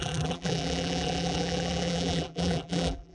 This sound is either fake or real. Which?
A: fake